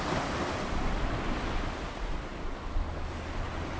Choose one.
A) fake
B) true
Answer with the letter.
B